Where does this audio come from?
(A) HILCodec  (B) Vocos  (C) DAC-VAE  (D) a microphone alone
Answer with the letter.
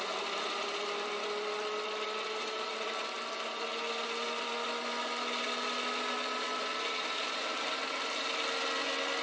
D